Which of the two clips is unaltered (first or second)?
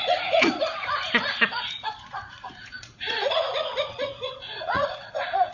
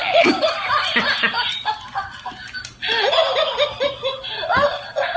second